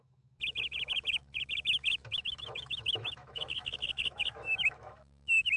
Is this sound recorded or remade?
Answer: remade